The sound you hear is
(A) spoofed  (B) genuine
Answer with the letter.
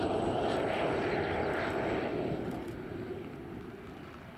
B